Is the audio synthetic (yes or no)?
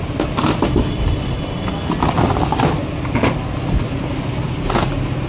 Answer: no